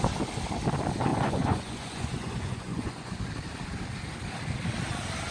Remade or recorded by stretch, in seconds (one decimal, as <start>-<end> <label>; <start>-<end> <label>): 0.0-1.1 recorded; 1.1-3.2 remade; 3.2-5.3 recorded